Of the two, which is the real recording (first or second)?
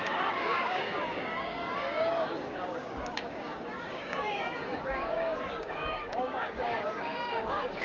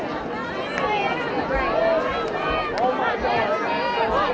second